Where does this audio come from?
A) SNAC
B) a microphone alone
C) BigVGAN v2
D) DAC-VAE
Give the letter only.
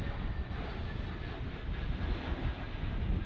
B